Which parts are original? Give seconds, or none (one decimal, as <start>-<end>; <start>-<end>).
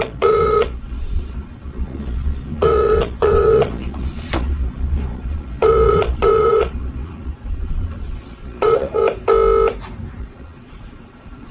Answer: 9.0-10.2